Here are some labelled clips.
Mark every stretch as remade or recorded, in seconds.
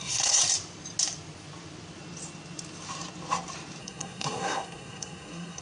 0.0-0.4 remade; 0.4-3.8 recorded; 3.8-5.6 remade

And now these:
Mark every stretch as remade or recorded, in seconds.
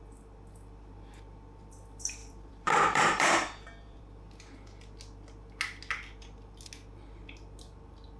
0.0-2.2 recorded; 2.2-4.0 remade; 4.0-8.2 recorded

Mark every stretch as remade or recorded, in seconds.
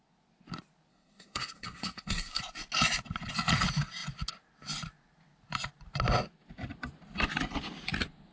0.0-0.9 recorded; 0.9-2.4 remade; 2.4-8.3 recorded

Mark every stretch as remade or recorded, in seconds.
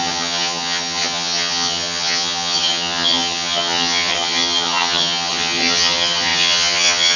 0.0-7.2 remade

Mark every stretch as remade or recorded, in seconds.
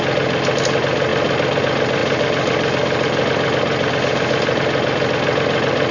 0.0-5.9 recorded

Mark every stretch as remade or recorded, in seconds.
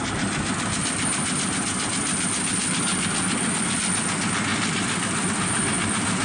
0.0-4.5 recorded; 4.5-5.3 remade; 5.3-6.2 recorded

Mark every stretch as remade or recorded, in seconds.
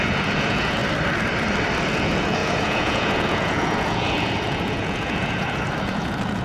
0.0-0.8 remade; 0.8-1.9 recorded; 1.9-6.4 remade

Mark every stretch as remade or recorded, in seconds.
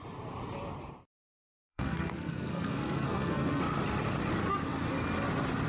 0.0-1.2 recorded; 1.2-3.6 remade; 3.6-5.7 recorded